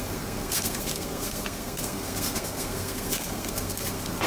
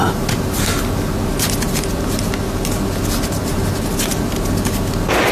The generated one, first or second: first